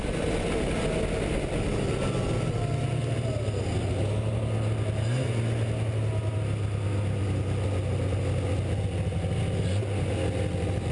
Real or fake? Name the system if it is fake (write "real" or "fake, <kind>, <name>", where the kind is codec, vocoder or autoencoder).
real